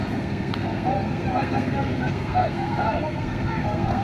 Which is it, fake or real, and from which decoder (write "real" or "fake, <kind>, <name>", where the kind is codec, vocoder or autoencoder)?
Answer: fake, codec, SNAC